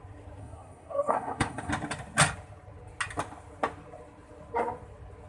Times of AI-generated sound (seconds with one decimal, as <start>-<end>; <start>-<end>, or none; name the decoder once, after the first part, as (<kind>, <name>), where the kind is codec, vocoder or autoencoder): 0.4-1.7 (codec, SNAC)